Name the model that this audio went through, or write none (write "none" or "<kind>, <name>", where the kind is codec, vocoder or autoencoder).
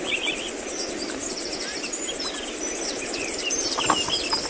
none